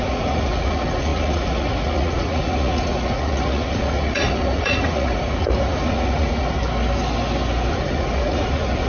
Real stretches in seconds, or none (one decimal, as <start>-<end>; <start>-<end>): 6.6-7.7